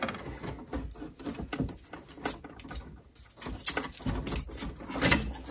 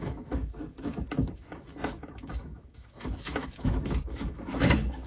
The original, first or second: first